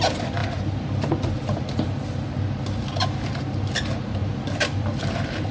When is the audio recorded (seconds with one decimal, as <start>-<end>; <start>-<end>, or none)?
0.0-0.4; 2.4-4.2